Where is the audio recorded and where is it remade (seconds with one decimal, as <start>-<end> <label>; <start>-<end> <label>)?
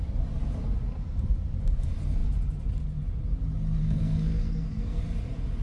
0.0-3.8 recorded; 3.8-5.0 remade; 5.0-5.6 recorded